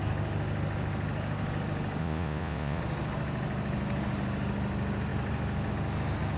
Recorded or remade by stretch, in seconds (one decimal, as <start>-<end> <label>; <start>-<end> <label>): 0.0-2.0 recorded; 2.0-2.8 remade; 2.8-6.4 recorded